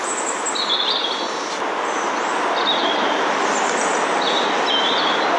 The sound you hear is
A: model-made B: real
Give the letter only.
B